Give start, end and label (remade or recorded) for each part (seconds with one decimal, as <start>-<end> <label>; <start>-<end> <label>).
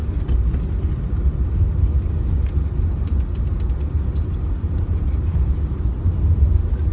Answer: 0.0-0.9 remade; 0.9-6.9 recorded